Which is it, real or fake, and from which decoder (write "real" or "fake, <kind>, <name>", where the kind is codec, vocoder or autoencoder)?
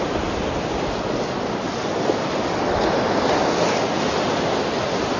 real